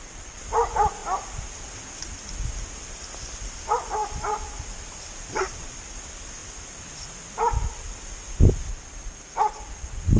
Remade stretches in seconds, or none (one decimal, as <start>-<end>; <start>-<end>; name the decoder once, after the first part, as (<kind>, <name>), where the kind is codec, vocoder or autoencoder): 0.0-1.0 (vocoder, BigVGAN v2); 2.7-4.0; 5.0-6.4; 9.6-10.2